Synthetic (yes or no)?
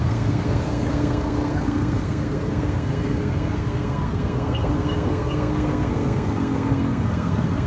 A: yes